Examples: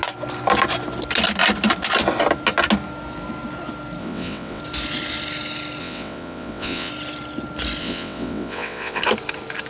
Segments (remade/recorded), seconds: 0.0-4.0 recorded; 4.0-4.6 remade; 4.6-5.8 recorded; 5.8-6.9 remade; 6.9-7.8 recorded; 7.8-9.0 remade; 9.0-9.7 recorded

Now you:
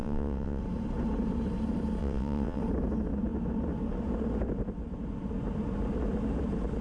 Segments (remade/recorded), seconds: 0.0-0.6 remade; 0.6-2.0 recorded; 2.0-2.6 remade; 2.6-6.8 recorded

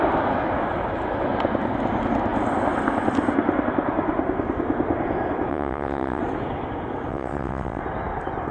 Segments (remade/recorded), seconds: 0.0-5.5 recorded; 5.5-6.2 remade; 6.2-7.1 recorded; 7.1-7.8 remade; 7.8-8.5 recorded

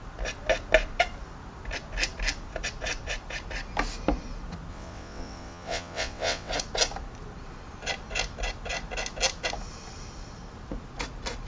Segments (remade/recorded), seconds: 0.0-4.7 recorded; 4.7-6.5 remade; 6.5-11.5 recorded